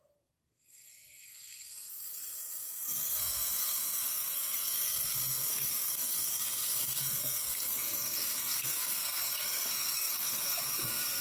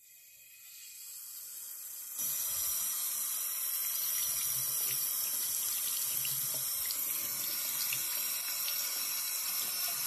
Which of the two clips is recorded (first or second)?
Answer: second